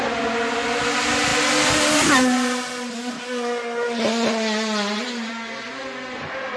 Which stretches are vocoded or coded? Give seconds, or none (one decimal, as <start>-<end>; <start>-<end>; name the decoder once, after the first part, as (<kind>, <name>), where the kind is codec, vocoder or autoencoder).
none